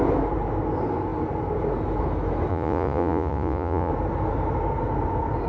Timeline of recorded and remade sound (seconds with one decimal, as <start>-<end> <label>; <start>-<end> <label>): 0.0-2.5 recorded; 2.5-3.9 remade; 3.9-5.5 recorded